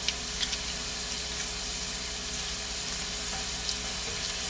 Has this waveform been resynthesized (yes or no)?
no